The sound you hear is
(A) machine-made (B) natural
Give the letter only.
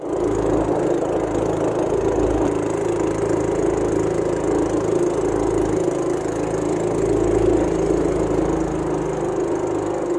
B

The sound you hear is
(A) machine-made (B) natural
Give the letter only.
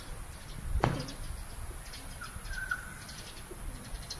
B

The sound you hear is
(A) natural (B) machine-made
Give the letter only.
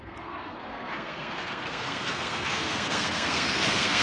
B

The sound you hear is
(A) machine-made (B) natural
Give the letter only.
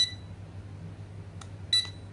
B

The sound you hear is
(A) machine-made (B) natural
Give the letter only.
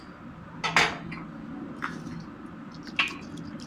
B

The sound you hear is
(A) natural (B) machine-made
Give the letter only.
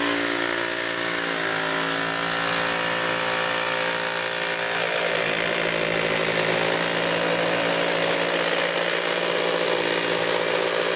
A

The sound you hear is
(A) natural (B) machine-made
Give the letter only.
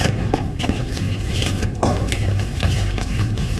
B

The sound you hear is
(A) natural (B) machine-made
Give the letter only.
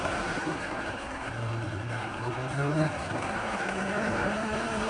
B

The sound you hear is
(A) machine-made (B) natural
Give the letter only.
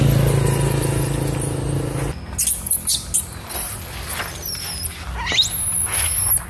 B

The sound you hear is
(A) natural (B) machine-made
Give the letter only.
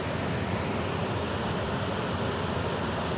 A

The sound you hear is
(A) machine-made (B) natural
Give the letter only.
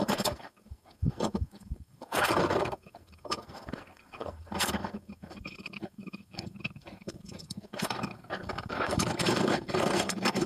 A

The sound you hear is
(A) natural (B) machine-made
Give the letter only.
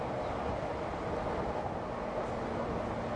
A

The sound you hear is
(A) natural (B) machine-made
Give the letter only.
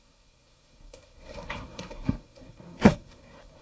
B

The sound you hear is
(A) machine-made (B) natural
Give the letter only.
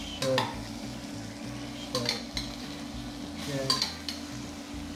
B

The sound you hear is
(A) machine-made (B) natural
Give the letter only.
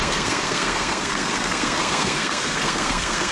A